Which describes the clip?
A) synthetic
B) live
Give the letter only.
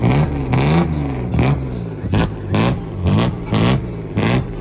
B